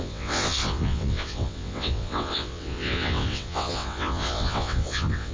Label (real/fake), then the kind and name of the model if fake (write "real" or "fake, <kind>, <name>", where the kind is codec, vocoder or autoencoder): fake, vocoder, WaveNeXt